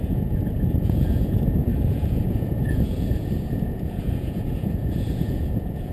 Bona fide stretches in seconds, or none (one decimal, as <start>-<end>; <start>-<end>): none